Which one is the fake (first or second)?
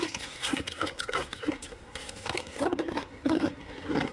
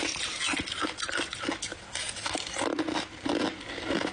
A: first